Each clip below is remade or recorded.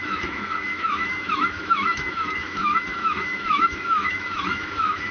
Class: remade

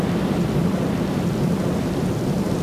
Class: recorded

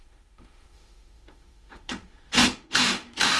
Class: remade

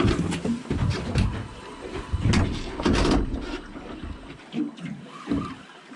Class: recorded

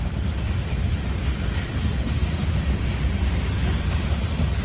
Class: recorded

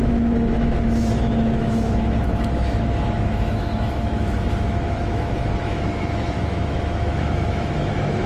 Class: remade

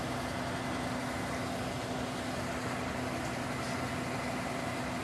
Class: recorded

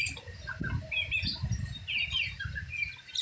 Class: recorded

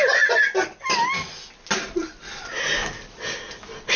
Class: recorded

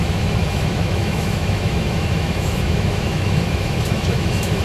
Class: remade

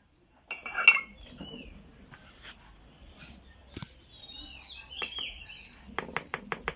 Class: recorded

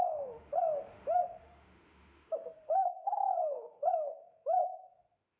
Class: remade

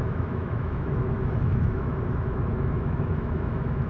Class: remade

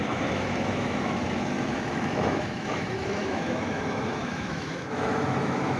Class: remade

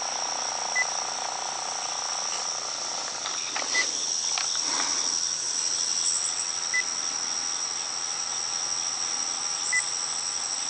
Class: recorded